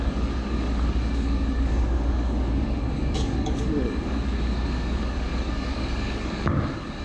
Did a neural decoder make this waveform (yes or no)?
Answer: yes